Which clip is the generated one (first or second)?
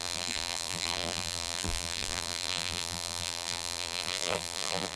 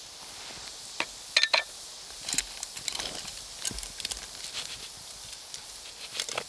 first